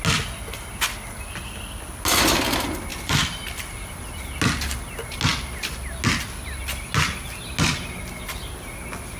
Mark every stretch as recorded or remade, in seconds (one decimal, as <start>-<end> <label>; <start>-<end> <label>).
0.0-2.9 recorded; 2.9-3.6 remade; 3.6-9.2 recorded

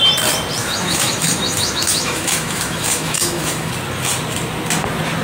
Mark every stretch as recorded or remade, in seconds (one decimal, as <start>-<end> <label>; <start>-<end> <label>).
0.0-0.6 recorded; 0.6-3.7 remade; 3.7-5.2 recorded

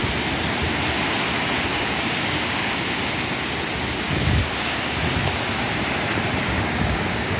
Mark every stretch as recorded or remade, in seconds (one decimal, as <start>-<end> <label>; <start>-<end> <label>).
0.0-1.7 recorded; 1.7-2.8 remade; 2.8-4.4 recorded; 4.4-5.0 remade; 5.0-6.4 recorded; 6.4-7.4 remade

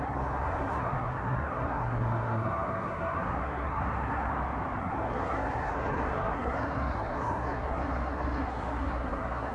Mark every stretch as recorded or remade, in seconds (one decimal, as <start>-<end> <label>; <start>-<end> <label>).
0.0-4.3 remade; 4.3-4.8 recorded; 4.8-9.5 remade

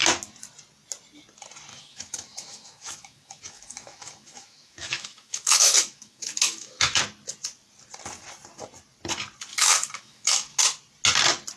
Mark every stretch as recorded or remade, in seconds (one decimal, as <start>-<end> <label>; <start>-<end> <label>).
0.0-1.7 recorded; 1.7-7.0 remade; 7.0-9.5 recorded; 9.5-10.6 remade; 10.6-11.6 recorded

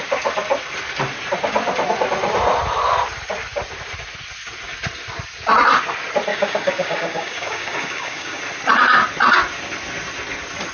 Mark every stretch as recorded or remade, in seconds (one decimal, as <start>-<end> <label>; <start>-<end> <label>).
0.0-6.3 recorded; 6.3-8.4 remade; 8.4-10.7 recorded